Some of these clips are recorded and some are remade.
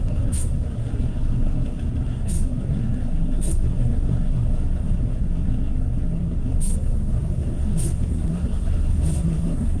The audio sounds remade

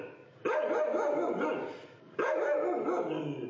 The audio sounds recorded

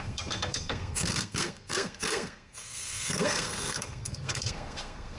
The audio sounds remade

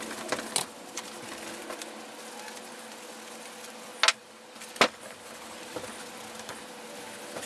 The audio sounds recorded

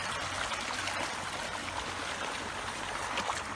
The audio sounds recorded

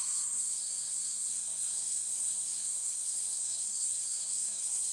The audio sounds remade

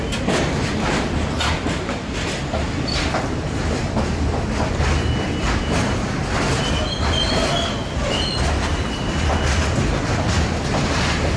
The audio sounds recorded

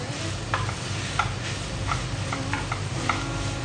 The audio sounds recorded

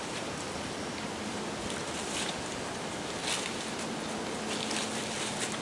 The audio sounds recorded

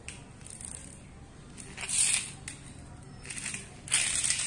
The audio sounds recorded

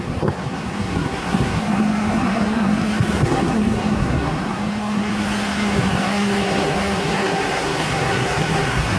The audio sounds remade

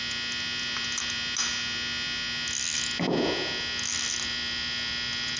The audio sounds recorded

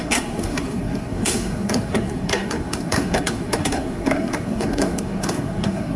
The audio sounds remade